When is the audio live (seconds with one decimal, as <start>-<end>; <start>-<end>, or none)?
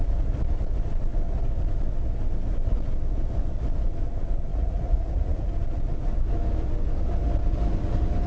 0.0-4.5; 5.5-8.3